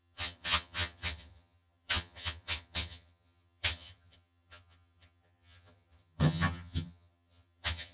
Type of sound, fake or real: fake